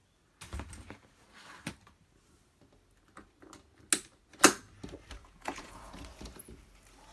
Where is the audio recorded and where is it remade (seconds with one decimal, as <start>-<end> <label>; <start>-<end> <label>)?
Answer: 0.0-5.2 recorded; 5.2-5.9 remade; 5.9-7.1 recorded